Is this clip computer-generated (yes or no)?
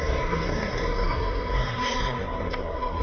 yes